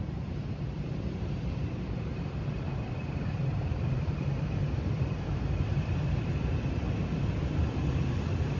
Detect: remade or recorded remade